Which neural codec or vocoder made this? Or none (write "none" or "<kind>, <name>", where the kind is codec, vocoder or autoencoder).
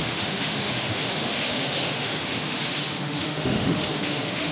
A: autoencoder, DAC-VAE